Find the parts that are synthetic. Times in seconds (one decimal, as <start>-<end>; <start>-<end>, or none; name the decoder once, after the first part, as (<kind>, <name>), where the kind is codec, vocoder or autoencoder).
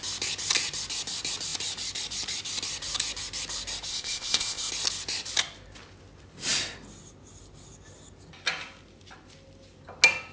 3.9-4.7 (codec, ZipCodec)